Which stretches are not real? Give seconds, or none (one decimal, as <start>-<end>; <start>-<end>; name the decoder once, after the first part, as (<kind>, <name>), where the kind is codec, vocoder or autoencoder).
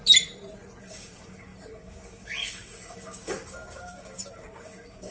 0.8-5.1 (codec, DAC)